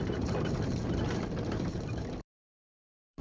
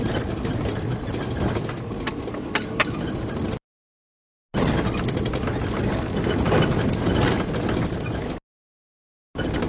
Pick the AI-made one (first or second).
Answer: first